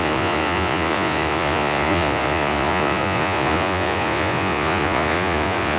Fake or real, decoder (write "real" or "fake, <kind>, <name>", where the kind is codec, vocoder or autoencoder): fake, vocoder, Vocos